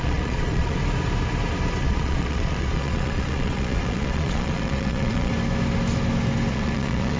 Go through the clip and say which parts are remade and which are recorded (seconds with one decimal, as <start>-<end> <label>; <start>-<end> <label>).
0.0-0.8 remade; 0.8-1.8 recorded; 1.8-5.3 remade; 5.3-6.5 recorded; 6.5-7.2 remade